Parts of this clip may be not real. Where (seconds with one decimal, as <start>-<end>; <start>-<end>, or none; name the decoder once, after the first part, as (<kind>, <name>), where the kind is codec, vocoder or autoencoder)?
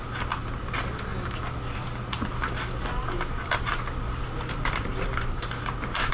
3.0-6.1 (vocoder, BigVGAN v2)